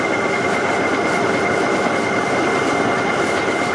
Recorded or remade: recorded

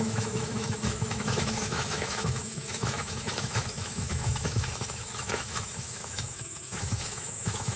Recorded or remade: remade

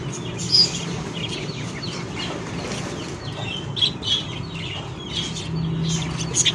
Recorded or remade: recorded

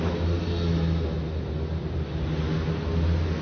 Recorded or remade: recorded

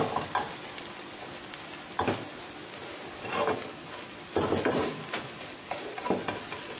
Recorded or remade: recorded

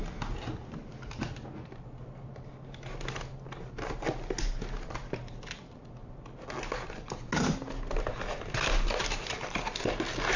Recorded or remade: recorded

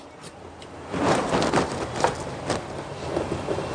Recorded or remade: recorded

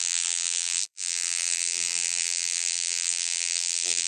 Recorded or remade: remade